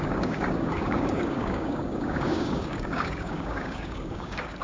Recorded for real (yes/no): no